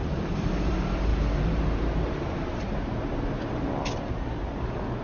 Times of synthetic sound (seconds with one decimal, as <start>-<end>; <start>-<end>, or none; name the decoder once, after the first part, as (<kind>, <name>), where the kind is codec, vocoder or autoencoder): 0.0-5.0 (vocoder, BigVGAN v2)